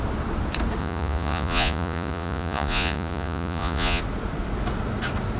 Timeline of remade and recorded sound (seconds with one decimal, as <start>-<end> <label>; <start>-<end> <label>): 0.0-0.8 recorded; 0.8-4.0 remade; 4.0-5.4 recorded